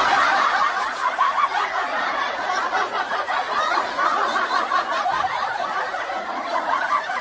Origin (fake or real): fake